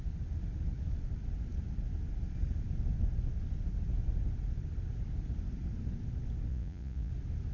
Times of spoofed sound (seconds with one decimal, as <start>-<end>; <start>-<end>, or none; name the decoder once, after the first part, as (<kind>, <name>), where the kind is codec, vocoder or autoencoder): 6.5-7.1 (vocoder, Vocos)